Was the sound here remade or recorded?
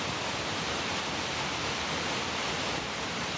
recorded